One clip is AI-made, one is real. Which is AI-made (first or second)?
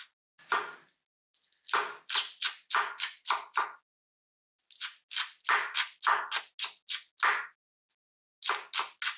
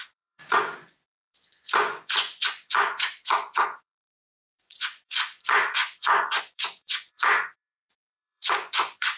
second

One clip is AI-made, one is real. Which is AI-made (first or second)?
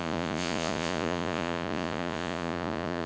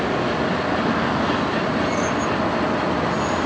first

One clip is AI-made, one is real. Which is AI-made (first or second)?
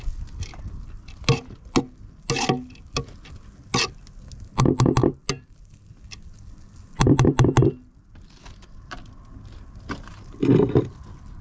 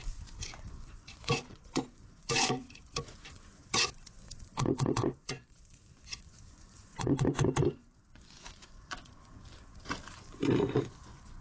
second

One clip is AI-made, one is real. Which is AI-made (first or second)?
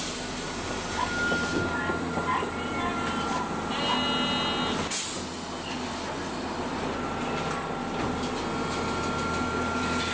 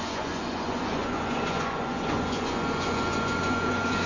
second